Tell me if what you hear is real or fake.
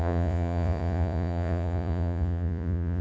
fake